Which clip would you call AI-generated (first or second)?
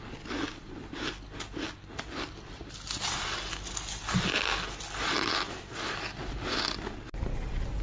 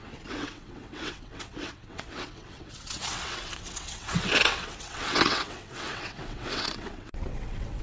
second